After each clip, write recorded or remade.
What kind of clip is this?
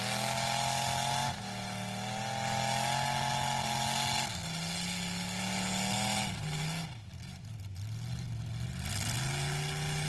recorded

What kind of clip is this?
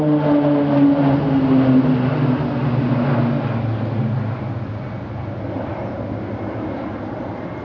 recorded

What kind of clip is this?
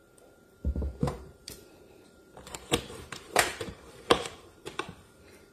remade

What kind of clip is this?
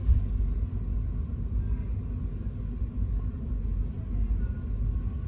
recorded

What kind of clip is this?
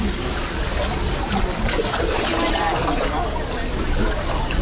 recorded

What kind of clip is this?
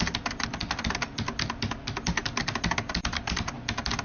recorded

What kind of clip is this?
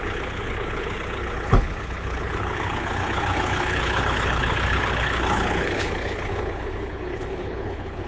remade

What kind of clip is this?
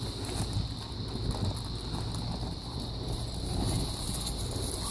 recorded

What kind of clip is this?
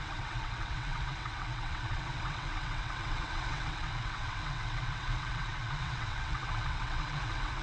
remade